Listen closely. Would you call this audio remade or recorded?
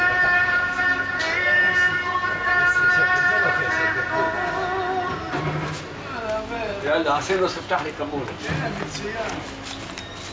recorded